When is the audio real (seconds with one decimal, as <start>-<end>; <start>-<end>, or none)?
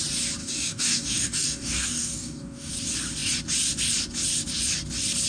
0.0-0.4; 2.7-5.3